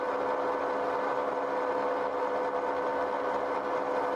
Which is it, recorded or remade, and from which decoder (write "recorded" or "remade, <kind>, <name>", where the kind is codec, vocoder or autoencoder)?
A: recorded